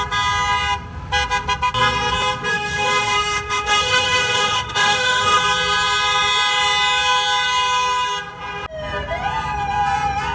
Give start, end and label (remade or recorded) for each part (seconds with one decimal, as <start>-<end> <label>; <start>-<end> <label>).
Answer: 0.0-2.5 recorded; 2.5-5.4 remade; 5.4-10.3 recorded